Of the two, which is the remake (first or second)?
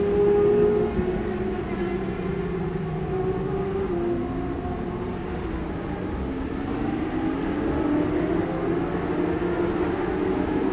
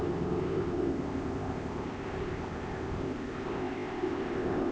second